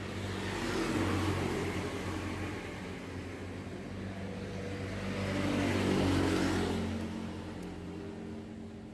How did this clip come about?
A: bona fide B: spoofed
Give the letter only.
A